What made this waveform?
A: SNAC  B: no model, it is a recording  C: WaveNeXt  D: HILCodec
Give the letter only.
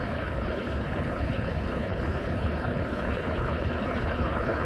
D